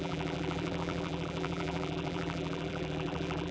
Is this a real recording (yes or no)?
no